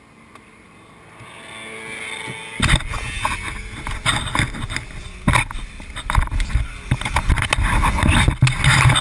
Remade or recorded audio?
recorded